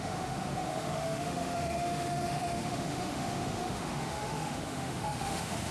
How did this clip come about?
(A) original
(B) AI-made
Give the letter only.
B